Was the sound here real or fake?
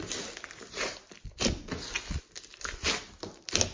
real